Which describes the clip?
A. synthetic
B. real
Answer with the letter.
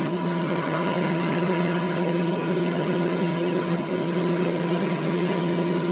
A